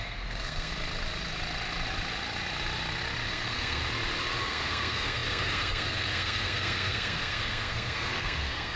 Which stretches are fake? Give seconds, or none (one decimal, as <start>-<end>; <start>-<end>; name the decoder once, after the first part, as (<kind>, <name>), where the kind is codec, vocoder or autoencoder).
0.0-0.7 (codec, SNAC); 3.3-3.8; 4.4-8.8